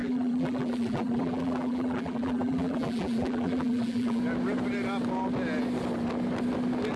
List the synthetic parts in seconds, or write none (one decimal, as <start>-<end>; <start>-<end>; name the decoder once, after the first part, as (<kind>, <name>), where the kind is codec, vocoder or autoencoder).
0.0-4.2 (vocoder, BigVGAN v2)